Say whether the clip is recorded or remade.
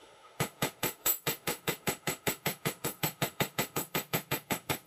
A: remade